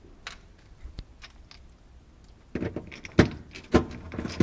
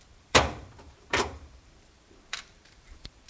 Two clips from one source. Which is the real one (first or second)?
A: first